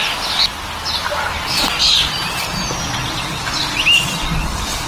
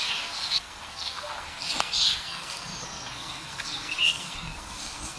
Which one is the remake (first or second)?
second